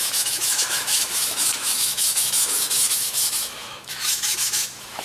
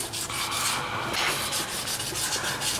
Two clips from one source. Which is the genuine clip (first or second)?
second